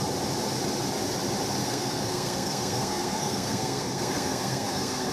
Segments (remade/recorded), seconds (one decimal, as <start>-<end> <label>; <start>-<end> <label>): 0.0-1.6 recorded; 1.6-5.1 remade